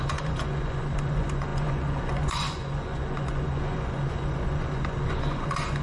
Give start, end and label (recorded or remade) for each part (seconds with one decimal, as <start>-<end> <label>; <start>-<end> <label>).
0.0-5.8 remade

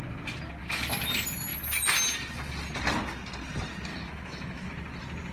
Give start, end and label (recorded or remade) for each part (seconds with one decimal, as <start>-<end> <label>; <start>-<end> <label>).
0.0-0.6 recorded; 0.6-1.1 remade; 1.1-3.9 recorded; 3.9-4.7 remade; 4.7-5.3 recorded